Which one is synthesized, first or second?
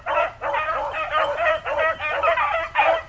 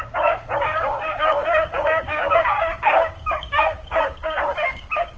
second